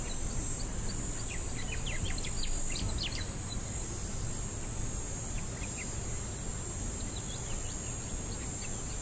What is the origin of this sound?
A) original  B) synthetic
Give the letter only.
A